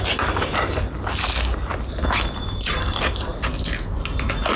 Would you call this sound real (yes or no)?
yes